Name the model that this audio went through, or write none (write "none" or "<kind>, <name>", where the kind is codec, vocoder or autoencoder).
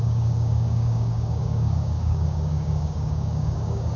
codec, DAC